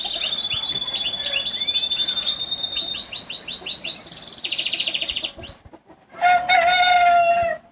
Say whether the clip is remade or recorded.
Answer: recorded